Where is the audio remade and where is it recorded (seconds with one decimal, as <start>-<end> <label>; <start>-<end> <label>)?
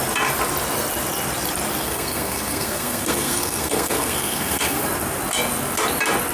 0.0-1.8 recorded; 1.8-4.8 remade; 4.8-6.3 recorded